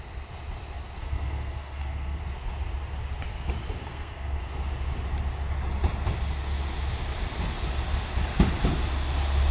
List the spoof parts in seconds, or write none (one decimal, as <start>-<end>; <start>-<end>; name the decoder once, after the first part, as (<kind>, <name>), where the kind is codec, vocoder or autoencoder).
1.0-2.2 (codec, SNAC); 3.8-4.4